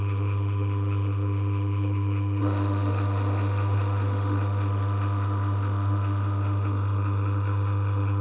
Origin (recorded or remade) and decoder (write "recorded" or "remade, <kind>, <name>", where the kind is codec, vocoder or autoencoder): remade, autoencoder, DAC-VAE